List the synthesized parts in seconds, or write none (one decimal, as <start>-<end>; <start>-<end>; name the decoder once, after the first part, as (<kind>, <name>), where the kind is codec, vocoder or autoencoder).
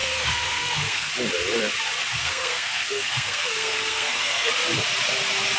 0.0-1.1 (codec, SNAC); 2.2-4.5